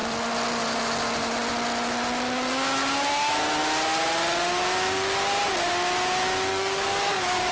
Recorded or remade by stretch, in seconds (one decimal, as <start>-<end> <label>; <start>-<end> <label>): 0.0-6.5 recorded; 6.5-7.5 remade

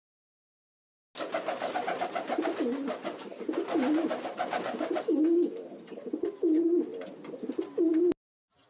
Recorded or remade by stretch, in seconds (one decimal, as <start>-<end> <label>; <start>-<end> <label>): 0.0-3.3 recorded; 3.3-5.0 remade; 5.0-6.9 recorded; 6.9-7.6 remade; 7.6-8.7 recorded

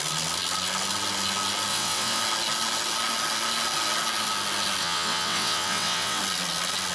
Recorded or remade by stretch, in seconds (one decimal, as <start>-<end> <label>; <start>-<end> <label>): 0.0-1.7 recorded; 1.7-2.2 remade; 2.2-4.8 recorded; 4.8-6.2 remade; 6.2-6.9 recorded

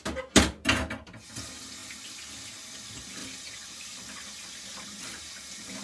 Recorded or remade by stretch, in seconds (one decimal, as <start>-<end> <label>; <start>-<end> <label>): 0.0-5.8 recorded

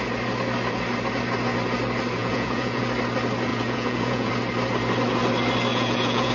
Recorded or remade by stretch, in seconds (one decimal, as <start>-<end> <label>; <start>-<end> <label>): 0.0-2.2 recorded; 2.2-2.8 remade; 2.8-3.5 recorded; 3.5-4.3 remade; 4.3-5.7 recorded; 5.7-6.3 remade

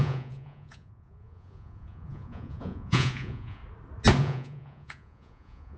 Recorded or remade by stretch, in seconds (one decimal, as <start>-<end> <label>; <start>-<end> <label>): 0.0-3.6 remade; 3.6-4.2 recorded; 4.2-5.8 remade